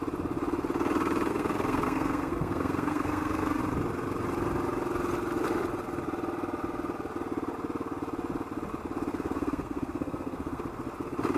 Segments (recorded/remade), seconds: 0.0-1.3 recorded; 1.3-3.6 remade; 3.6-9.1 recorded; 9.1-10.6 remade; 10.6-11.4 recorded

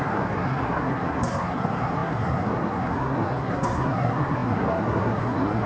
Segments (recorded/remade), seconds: 0.0-5.7 remade

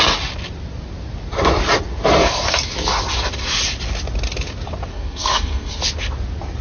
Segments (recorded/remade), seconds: 0.0-4.9 recorded; 4.9-5.8 remade; 5.8-6.6 recorded